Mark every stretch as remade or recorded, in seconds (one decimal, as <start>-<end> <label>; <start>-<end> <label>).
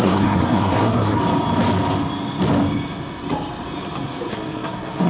0.0-1.2 remade; 1.2-4.3 recorded; 4.3-5.1 remade